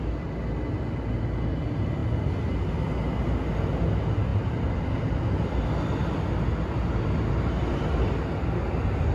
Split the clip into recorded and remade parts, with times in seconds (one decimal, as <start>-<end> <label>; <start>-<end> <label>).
0.0-9.1 recorded

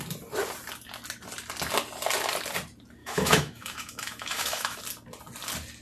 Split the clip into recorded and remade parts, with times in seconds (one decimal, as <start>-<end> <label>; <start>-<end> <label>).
0.0-3.0 recorded; 3.0-4.8 remade; 4.8-5.8 recorded

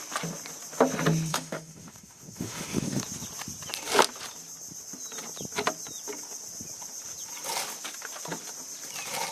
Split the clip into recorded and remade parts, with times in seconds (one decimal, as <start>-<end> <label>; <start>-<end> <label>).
0.0-1.3 recorded; 1.3-3.0 remade; 3.0-9.3 recorded

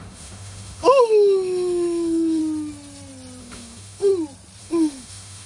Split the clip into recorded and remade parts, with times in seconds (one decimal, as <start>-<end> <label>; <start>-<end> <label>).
0.0-2.4 remade; 2.4-3.4 recorded; 3.4-4.1 remade; 4.1-4.6 recorded; 4.6-5.5 remade

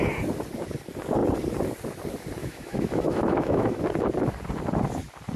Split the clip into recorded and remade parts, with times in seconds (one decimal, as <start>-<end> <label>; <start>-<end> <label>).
0.0-2.4 recorded; 2.4-3.8 remade; 3.8-5.4 recorded

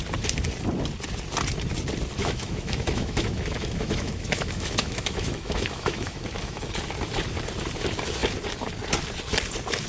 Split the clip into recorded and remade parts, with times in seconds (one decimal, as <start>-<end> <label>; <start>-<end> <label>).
0.0-2.2 recorded; 2.2-6.8 remade; 6.8-9.9 recorded